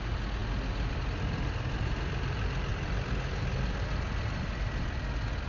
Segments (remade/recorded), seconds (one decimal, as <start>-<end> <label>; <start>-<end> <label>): 0.0-5.5 recorded